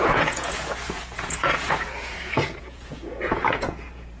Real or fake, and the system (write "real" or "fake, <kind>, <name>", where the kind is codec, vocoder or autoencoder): fake, vocoder, Vocos